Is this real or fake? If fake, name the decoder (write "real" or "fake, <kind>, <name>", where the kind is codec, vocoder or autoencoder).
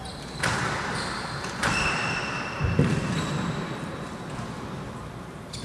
real